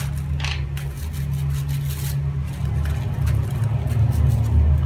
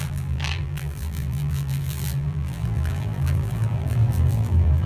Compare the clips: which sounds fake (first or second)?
second